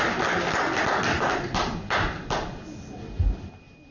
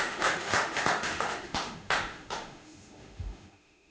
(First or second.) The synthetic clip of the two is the second